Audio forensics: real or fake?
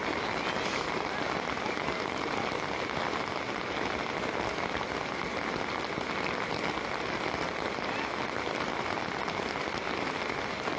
real